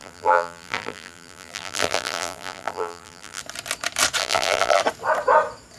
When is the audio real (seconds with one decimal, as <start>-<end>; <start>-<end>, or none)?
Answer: 3.4-4.2; 4.8-5.8